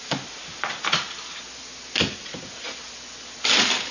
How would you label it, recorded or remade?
recorded